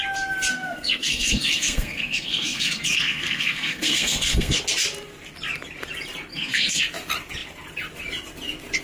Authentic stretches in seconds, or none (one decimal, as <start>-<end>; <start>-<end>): 0.0-0.5; 4.6-6.3; 6.8-8.8